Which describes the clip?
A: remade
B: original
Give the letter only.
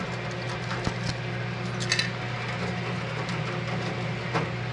B